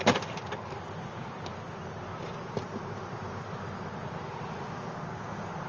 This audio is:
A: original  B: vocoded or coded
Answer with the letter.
A